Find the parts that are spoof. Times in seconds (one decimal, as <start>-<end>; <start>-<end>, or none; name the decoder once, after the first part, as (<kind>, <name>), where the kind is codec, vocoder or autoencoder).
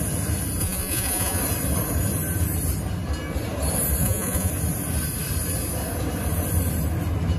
0.6-1.4 (vocoder, Vocos); 4.0-4.5